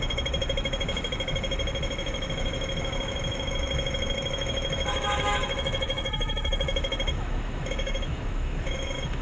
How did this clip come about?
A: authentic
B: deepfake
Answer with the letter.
B